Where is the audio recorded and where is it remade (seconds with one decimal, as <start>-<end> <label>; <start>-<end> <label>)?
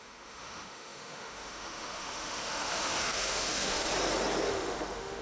0.0-3.9 remade; 3.9-4.5 recorded; 4.5-5.2 remade